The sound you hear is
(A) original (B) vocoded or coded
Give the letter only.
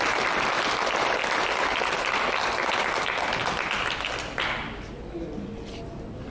A